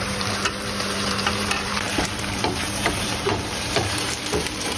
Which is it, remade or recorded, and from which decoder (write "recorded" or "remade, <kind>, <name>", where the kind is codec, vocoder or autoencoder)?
remade, vocoder, BigVGAN v2